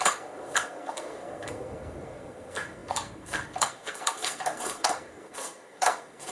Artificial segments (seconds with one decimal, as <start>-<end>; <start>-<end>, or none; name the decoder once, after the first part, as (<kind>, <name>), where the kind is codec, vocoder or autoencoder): 0.0-6.3 (codec, SNAC)